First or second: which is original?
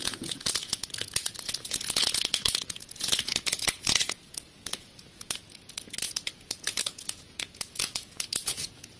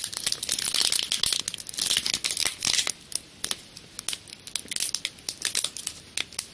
second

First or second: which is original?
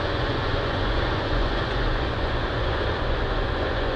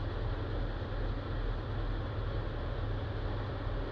second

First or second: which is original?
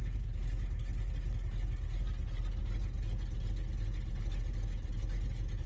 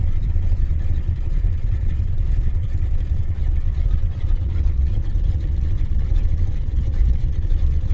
first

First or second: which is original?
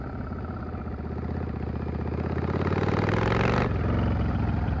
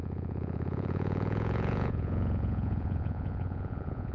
first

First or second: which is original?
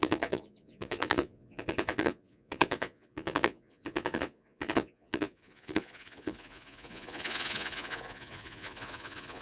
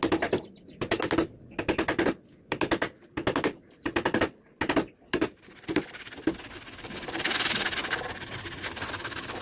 second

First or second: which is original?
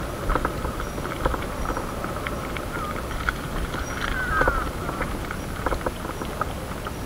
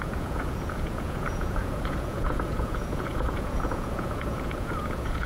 first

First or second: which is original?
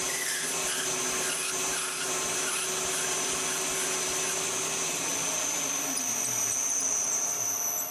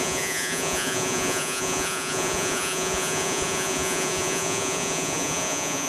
first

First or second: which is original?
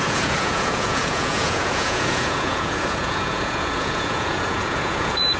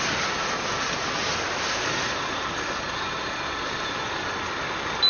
second